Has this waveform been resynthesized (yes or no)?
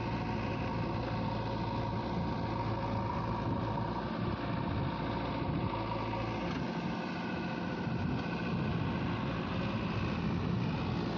no